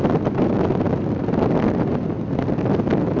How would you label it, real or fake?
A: real